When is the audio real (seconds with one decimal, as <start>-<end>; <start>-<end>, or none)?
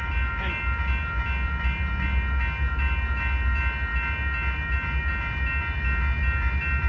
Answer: 0.0-6.9